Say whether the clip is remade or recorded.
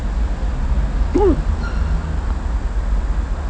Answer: recorded